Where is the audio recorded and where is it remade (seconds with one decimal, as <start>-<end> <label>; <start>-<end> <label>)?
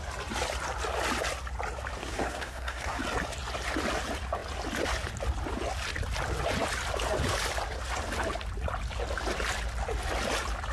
0.0-2.0 recorded; 2.0-3.0 remade; 3.0-10.7 recorded